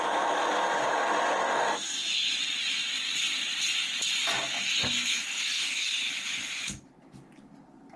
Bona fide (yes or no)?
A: yes